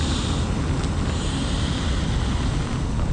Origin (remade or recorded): recorded